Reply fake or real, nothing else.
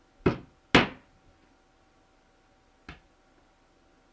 real